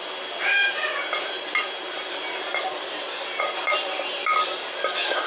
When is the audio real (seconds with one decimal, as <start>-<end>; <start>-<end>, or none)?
0.0-5.3